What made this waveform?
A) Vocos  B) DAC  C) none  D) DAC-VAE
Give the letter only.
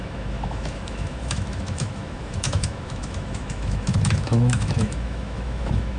D